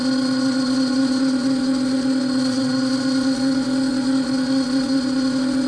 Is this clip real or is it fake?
fake